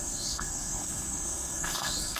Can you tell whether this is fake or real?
fake